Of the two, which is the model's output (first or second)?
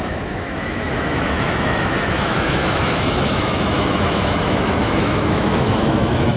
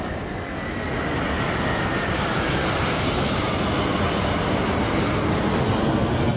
first